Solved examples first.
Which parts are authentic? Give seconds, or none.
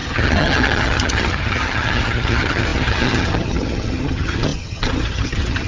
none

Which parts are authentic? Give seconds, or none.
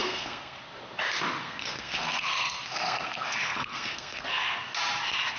0.6-1.4; 4.6-5.4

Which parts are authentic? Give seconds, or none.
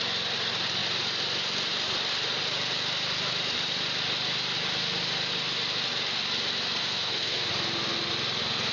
0.0-6.8; 7.5-8.7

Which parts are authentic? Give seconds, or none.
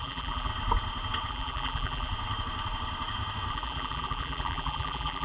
0.5-1.3; 2.1-3.5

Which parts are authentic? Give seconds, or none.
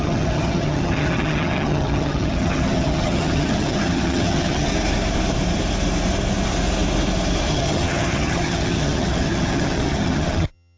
4.7-7.5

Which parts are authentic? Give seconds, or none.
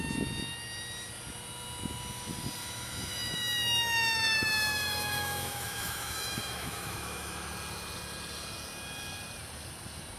0.0-2.6; 7.5-10.2